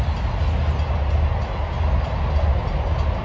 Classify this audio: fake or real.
real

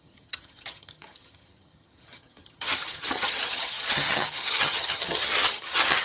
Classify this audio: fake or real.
fake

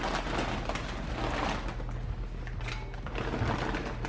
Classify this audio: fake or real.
real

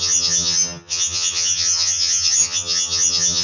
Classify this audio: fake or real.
fake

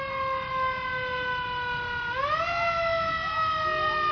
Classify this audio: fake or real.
real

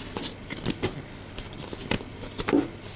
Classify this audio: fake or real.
real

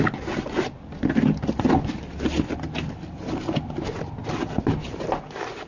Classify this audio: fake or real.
real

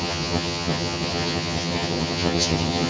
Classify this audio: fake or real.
fake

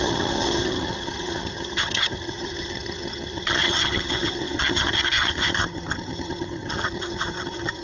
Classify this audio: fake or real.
fake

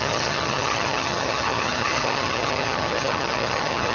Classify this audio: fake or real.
fake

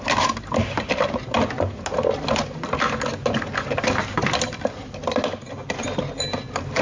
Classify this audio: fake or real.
real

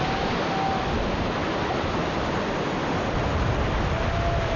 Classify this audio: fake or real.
real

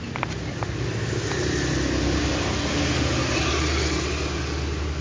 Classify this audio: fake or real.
real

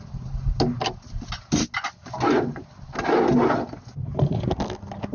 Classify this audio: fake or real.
real